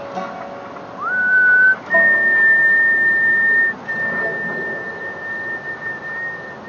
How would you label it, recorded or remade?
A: recorded